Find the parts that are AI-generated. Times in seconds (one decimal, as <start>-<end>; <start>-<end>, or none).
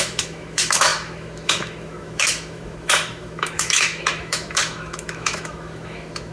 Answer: 0.0-6.3